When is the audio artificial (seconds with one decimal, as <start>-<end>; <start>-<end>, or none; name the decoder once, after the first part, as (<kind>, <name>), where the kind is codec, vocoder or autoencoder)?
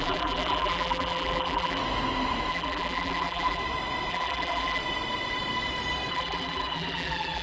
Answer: 0.0-1.8 (vocoder, BigVGAN v2); 2.5-3.6; 4.1-4.8; 6.1-7.4